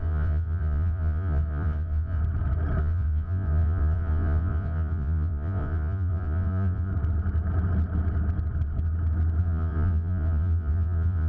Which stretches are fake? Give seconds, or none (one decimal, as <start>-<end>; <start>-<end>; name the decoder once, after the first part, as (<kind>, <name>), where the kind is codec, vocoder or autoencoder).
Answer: 0.0-2.2 (vocoder, Vocos); 2.8-6.9; 9.4-11.3